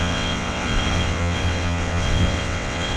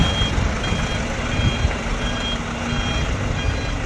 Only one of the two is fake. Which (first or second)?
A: first